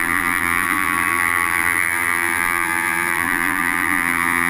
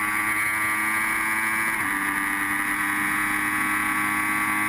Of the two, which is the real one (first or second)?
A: second